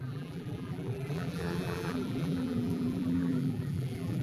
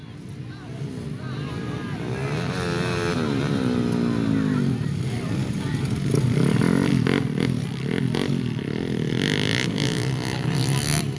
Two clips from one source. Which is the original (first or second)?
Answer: second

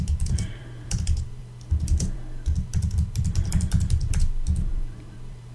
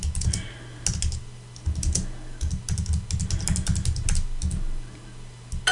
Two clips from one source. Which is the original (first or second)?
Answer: second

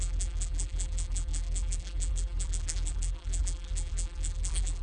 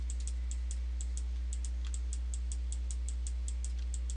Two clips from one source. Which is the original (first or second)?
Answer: second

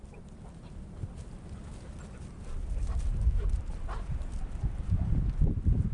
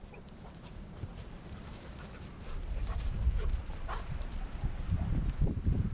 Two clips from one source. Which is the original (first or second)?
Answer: first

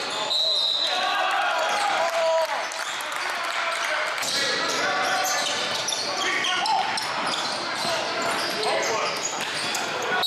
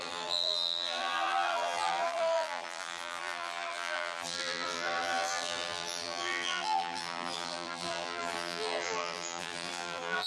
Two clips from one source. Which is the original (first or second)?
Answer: first